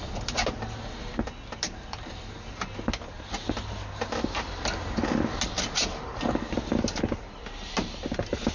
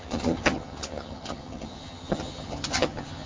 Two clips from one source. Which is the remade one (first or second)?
second